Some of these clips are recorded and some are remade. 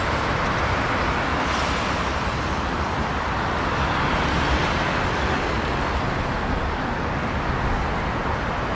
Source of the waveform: recorded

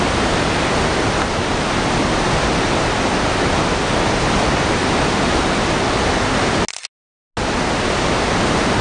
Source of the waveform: recorded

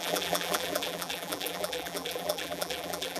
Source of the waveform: remade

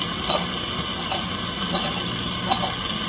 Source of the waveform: recorded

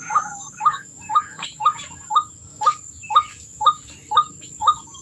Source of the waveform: remade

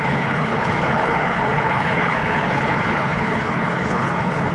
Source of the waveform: remade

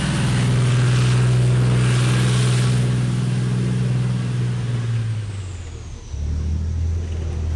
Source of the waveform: recorded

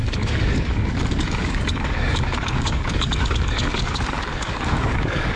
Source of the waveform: remade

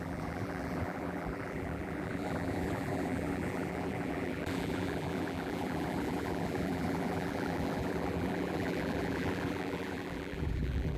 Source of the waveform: remade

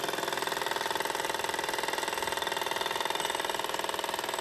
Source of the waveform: recorded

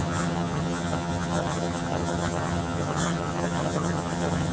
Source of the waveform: remade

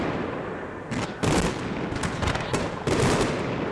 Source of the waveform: remade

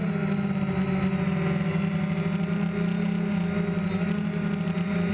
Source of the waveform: recorded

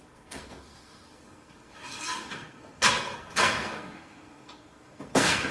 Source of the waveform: remade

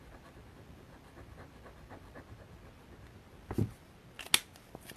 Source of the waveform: recorded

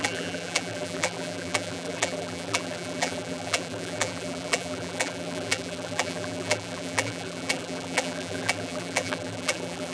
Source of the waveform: remade